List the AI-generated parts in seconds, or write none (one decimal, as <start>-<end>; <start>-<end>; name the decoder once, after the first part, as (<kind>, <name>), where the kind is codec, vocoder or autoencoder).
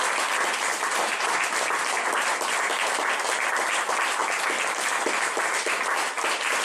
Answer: 0.7-1.5 (vocoder, BigVGAN v2)